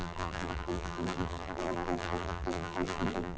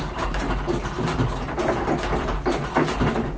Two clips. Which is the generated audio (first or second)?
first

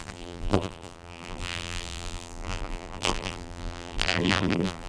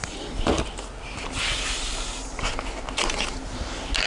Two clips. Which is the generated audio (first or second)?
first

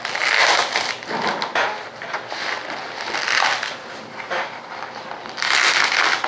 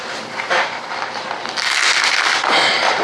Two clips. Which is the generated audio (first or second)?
second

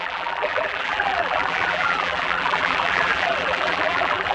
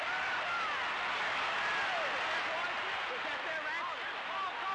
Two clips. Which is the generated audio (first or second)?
first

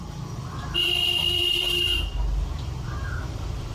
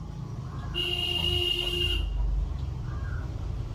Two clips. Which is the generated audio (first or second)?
first